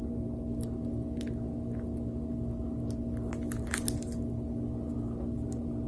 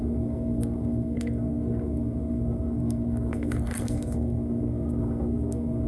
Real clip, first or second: first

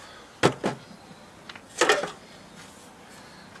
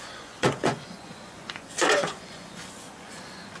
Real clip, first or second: first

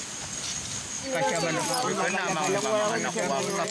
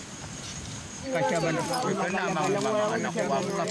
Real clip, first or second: first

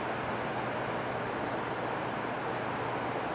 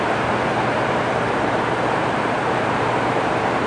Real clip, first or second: first